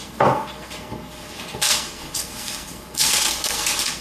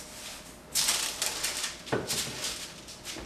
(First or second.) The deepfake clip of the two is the first